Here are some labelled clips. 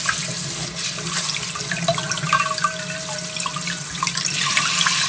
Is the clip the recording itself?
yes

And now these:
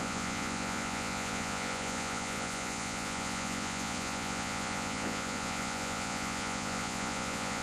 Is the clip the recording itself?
no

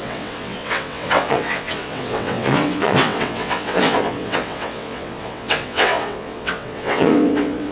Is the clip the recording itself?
no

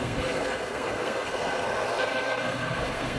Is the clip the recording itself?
no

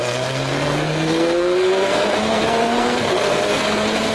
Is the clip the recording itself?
no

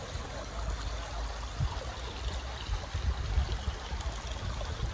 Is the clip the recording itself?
yes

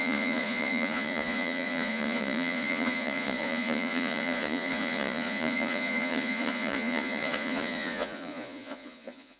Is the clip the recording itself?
no